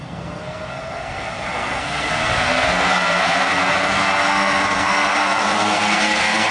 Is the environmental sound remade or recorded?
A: remade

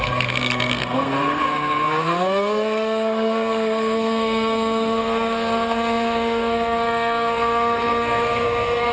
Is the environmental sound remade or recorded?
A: remade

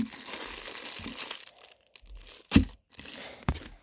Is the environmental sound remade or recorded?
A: recorded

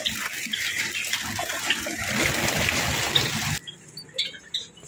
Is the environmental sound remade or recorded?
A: recorded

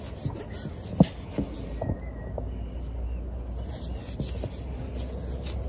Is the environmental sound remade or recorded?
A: recorded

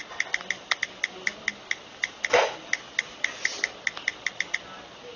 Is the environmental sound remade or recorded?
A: recorded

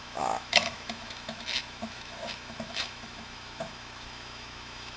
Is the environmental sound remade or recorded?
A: remade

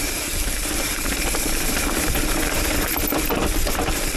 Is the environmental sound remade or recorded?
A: recorded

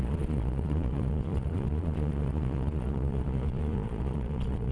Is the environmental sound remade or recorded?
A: remade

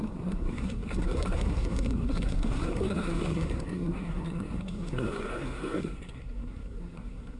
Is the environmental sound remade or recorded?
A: remade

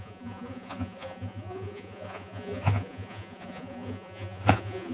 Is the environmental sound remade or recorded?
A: remade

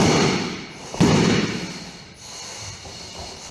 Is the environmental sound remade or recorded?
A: recorded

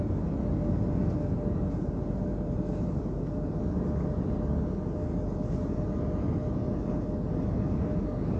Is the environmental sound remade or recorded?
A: recorded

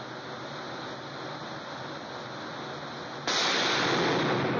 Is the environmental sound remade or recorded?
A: recorded